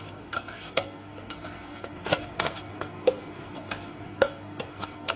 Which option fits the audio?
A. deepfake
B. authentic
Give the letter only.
A